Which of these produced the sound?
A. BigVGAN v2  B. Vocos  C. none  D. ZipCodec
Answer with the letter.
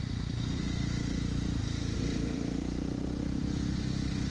A